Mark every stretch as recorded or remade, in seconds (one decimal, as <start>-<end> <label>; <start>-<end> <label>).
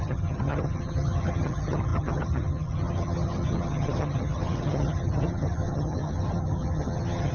0.0-7.3 remade